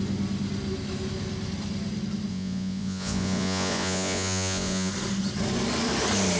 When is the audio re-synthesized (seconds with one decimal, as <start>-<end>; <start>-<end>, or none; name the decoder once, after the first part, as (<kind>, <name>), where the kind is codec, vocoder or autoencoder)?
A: 2.3-4.9 (vocoder, Vocos)